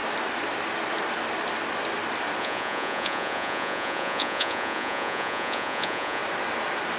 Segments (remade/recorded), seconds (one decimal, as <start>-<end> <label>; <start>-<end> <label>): 0.0-2.4 recorded; 2.4-6.2 remade; 6.2-7.0 recorded